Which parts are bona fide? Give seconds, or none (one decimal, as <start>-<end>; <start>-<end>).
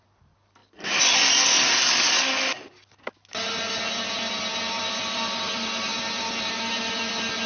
0.0-7.5